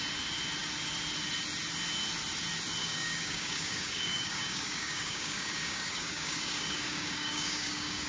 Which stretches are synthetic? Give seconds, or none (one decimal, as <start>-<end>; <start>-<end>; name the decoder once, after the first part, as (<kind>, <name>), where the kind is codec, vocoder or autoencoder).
2.8-8.1 (codec, DAC)